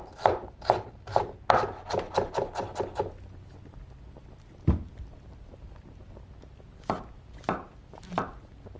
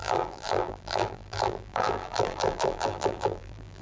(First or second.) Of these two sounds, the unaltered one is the first